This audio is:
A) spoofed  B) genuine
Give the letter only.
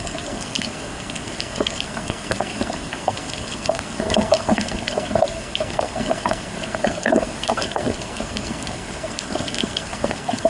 A